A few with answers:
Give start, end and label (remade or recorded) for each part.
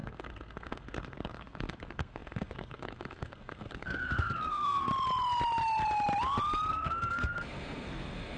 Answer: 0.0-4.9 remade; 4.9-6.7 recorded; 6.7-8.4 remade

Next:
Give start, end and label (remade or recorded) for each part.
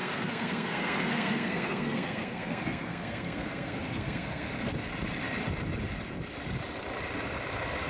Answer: 0.0-4.7 remade; 4.7-7.9 recorded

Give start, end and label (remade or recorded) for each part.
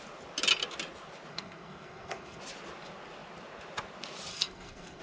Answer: 0.0-1.3 recorded; 1.3-2.4 remade; 2.4-4.3 recorded; 4.3-5.0 remade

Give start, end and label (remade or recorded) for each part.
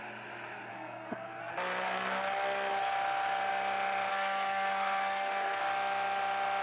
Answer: 0.0-0.7 recorded; 0.7-1.5 remade; 1.5-4.1 recorded; 4.1-5.6 remade; 5.6-6.6 recorded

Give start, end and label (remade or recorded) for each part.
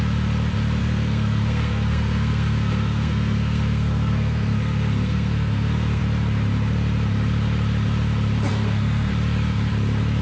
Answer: 0.0-0.8 recorded; 0.8-6.0 remade; 6.0-8.5 recorded; 8.5-9.1 remade; 9.1-10.2 recorded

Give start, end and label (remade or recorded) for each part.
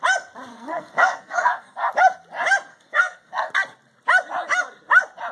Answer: 0.0-0.5 recorded; 0.5-1.9 remade; 1.9-2.7 recorded; 2.7-3.5 remade; 3.5-5.3 recorded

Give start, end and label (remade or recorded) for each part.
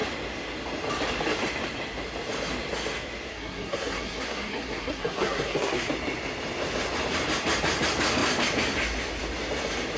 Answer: 0.0-3.3 recorded; 3.3-5.9 remade; 5.9-10.0 recorded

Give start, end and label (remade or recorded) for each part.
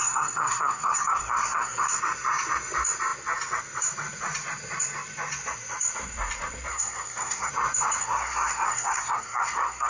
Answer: 0.0-1.9 remade; 1.9-6.7 recorded; 6.7-7.5 remade; 7.5-8.0 recorded; 8.0-9.9 remade